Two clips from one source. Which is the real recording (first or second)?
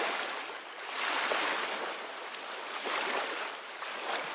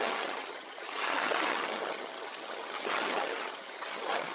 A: first